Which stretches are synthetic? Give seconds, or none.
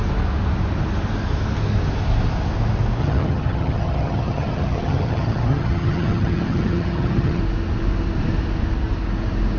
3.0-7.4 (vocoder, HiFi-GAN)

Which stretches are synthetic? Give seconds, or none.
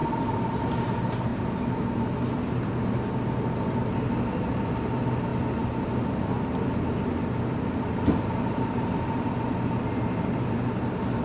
none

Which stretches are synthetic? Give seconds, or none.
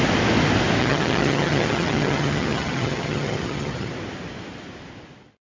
0.8-3.9 (vocoder, HiFi-GAN)